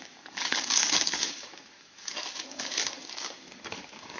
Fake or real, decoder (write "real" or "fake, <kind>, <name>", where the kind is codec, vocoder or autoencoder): fake, codec, DAC